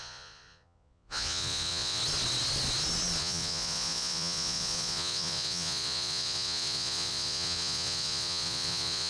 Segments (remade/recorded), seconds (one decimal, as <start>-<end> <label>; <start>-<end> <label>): 0.0-2.0 remade; 2.0-3.2 recorded; 3.2-9.1 remade